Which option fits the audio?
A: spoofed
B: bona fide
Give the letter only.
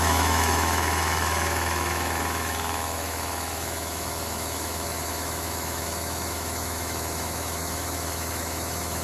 A